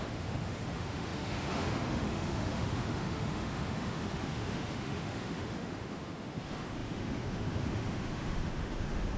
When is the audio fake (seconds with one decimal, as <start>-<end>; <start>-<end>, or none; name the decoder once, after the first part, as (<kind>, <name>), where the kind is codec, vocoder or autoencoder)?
0.0-9.2 (autoencoder, DAC-VAE)